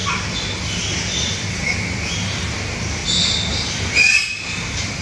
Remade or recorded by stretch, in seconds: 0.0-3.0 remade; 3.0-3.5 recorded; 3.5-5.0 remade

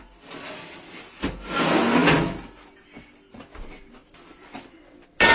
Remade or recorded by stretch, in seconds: 0.0-5.3 recorded

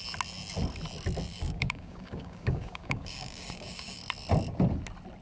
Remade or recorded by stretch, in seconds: 0.0-1.3 recorded; 1.3-4.0 remade; 4.0-5.2 recorded